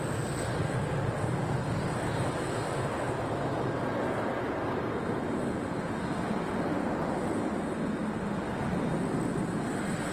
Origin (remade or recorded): recorded